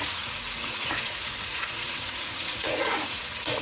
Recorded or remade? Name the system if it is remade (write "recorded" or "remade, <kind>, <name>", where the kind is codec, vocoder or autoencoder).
remade, vocoder, Vocos